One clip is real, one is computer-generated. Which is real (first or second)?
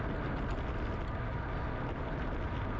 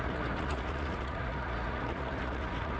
first